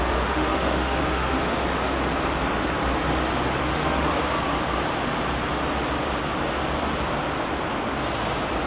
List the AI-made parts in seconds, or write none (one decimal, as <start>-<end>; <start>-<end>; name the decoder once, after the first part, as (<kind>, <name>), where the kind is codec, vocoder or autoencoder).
0.0-1.4 (autoencoder, DAC-VAE); 3.6-4.2